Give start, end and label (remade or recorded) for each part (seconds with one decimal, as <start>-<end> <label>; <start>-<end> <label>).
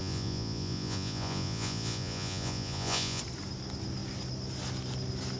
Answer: 0.0-3.2 remade; 3.2-5.4 recorded